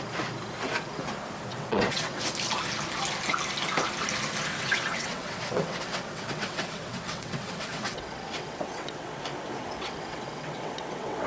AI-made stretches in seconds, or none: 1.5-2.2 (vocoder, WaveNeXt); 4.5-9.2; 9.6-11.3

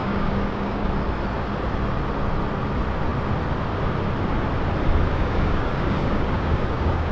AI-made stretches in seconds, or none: 0.0-0.9 (codec, DAC); 5.1-7.1

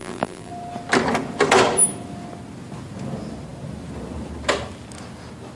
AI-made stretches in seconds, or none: 0.0-0.5 (vocoder, BigVGAN v2)